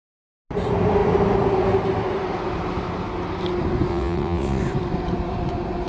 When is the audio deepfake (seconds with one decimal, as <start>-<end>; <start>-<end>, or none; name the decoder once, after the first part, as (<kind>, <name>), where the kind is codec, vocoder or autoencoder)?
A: 3.9-4.6 (vocoder, WaveNeXt)

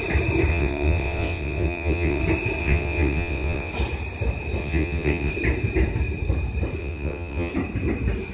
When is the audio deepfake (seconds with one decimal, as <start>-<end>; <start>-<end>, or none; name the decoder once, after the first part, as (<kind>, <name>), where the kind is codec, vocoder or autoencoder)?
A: 0.5-2.2 (vocoder, WaveNeXt); 2.6-3.7; 4.6-5.3; 6.8-7.5

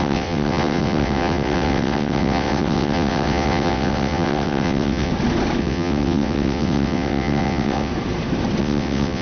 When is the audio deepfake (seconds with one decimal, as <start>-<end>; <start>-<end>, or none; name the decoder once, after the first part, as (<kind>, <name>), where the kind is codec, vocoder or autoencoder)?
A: 0.0-5.1 (vocoder, WaveNeXt); 5.6-7.9; 8.6-9.2

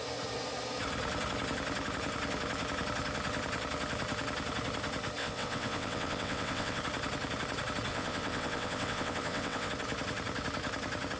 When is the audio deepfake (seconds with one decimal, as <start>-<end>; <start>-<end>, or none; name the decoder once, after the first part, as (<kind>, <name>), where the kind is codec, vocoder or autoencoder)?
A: 5.2-6.8 (vocoder, WaveNeXt); 7.9-9.7

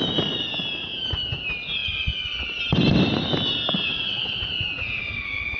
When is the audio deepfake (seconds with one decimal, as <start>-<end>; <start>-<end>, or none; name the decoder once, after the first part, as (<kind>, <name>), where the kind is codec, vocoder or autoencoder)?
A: 3.9-4.5 (vocoder, WaveNeXt)

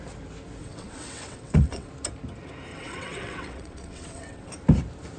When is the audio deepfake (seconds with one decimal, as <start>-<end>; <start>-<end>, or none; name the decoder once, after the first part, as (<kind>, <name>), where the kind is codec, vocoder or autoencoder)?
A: 0.6-1.9 (vocoder, WaveNeXt); 2.7-4.5